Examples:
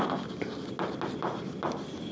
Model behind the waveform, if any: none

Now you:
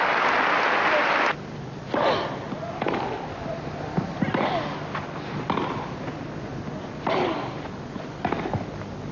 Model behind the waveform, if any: none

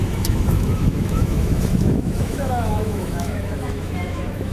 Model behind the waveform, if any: autoencoder, DAC-VAE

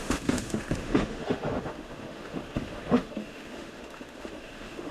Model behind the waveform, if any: autoencoder, DAC-VAE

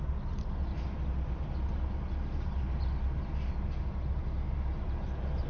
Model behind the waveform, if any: none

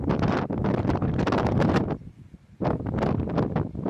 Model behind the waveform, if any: none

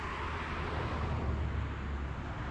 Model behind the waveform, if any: none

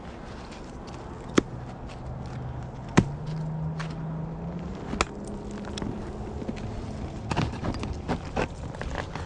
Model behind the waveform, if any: none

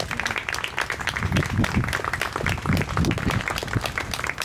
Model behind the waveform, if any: none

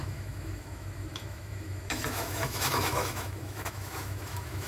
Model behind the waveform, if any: autoencoder, DAC-VAE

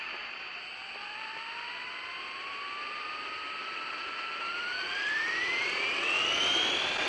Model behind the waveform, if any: none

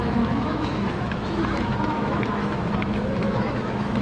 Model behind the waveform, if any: autoencoder, DAC-VAE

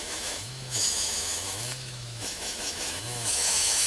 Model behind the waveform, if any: autoencoder, DAC-VAE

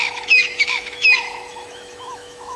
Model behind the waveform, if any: autoencoder, DAC-VAE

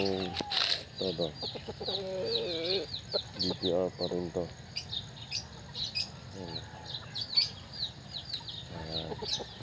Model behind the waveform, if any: none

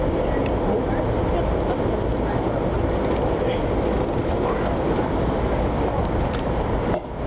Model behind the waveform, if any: none